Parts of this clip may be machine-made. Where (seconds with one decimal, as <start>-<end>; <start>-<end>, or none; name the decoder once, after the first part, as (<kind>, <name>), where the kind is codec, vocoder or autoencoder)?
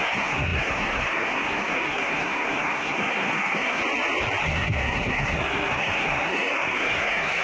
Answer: 0.0-3.8 (codec, SNAC); 4.4-7.4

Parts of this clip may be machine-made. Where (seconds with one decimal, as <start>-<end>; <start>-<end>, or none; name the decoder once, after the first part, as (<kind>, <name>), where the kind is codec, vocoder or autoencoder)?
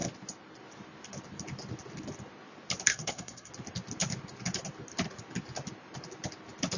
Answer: 2.9-3.5 (codec, SNAC)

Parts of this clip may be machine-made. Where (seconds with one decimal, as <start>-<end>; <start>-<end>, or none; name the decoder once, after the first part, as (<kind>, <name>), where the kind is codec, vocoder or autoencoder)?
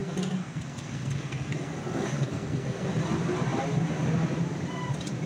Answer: 0.0-2.9 (codec, SNAC)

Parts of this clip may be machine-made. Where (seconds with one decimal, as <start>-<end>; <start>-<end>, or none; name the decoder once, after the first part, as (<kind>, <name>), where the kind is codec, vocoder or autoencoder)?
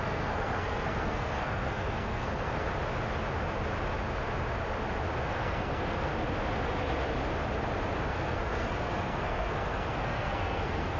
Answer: 0.0-2.7 (codec, SNAC); 5.3-6.1; 8.1-11.0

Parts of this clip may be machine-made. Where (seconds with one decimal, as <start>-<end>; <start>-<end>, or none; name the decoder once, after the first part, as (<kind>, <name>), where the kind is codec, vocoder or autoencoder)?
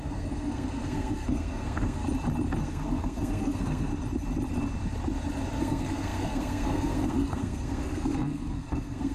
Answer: 0.0-2.0 (codec, SNAC); 2.6-3.9; 5.6-9.1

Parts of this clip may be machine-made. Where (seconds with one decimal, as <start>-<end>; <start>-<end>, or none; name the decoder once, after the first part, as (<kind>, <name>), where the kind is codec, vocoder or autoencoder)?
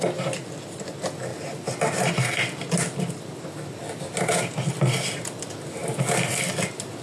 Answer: none